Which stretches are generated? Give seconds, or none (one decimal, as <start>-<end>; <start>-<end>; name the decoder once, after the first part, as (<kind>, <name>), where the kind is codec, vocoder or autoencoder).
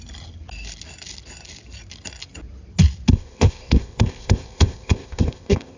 3.1-5.8 (codec, ZipCodec)